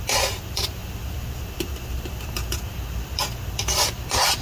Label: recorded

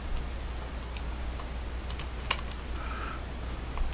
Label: recorded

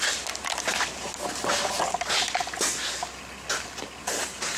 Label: recorded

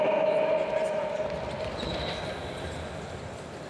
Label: recorded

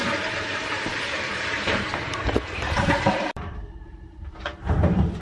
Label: remade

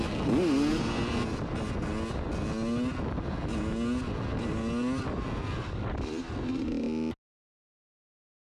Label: recorded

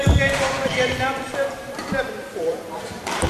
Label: remade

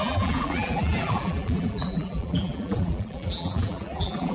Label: remade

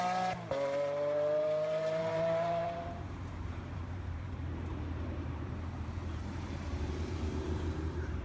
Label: remade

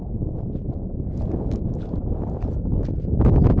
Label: recorded